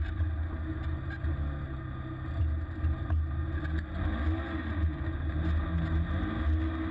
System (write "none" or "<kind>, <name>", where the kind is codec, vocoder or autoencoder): none